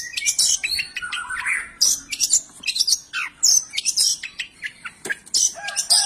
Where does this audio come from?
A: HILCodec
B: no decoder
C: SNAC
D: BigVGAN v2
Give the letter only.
D